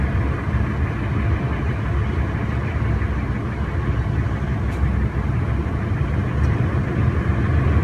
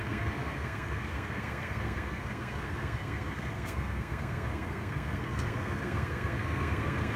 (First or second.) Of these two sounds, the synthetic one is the second